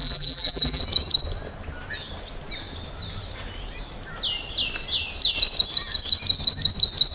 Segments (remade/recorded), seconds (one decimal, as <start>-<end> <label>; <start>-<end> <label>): 0.0-0.8 remade; 0.8-7.1 recorded